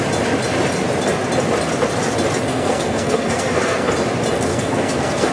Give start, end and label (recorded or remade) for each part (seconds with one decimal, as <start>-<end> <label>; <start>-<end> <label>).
0.0-2.5 recorded; 2.5-3.9 remade; 3.9-4.5 recorded; 4.5-5.3 remade